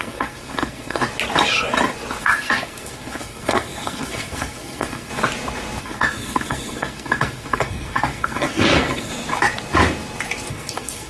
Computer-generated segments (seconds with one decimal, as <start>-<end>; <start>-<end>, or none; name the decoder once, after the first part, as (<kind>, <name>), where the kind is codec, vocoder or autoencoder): 0.0-1.0 (codec, SNAC); 2.2-5.1; 5.8-9.1; 10.5-11.1